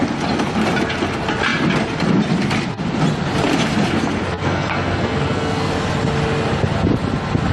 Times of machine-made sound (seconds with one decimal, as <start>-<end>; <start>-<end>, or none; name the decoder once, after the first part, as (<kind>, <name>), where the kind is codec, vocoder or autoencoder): 4.4-5.7 (codec, SNAC)